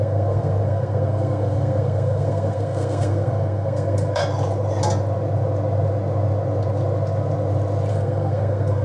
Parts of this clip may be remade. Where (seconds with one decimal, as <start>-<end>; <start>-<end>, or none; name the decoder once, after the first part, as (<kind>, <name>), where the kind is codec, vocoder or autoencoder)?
0.0-4.2 (codec, SNAC); 7.9-8.8